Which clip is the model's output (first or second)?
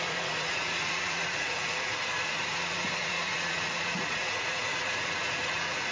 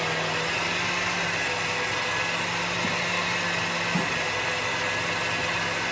first